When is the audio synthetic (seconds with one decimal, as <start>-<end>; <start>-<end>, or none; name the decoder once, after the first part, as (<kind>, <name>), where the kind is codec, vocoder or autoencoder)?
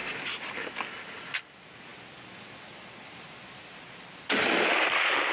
none